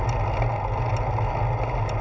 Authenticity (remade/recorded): recorded